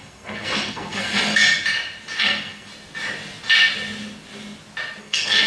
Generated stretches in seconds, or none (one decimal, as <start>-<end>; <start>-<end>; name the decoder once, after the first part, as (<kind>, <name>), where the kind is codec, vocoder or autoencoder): 0.0-1.4 (codec, SNAC); 2.2-2.7; 5.0-5.5